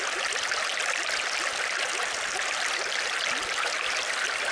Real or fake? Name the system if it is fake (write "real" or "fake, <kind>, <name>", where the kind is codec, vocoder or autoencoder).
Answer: real